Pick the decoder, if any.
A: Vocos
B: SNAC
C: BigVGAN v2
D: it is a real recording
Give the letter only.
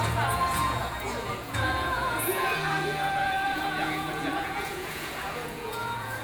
A